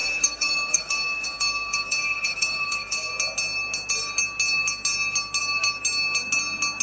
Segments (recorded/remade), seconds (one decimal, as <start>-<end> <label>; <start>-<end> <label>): 0.0-3.1 remade; 3.1-6.8 recorded